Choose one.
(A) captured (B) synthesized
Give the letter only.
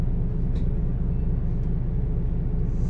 A